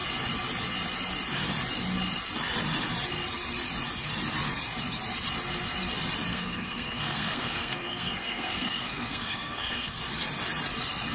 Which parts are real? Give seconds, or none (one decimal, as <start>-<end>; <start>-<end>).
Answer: 0.0-6.3; 10.0-11.1